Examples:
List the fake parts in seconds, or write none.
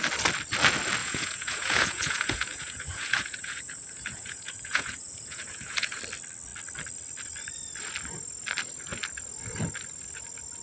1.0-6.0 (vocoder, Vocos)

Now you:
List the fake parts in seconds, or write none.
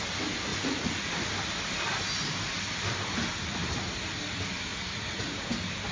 0.5-1.1 (vocoder, Vocos); 4.7-5.5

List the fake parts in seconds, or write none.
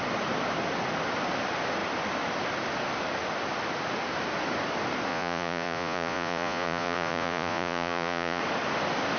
5.1-8.4 (vocoder, Vocos)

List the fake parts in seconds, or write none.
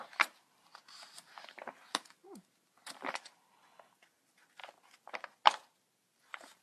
none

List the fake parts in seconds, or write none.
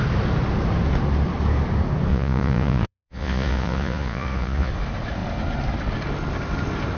2.1-4.7 (vocoder, Vocos)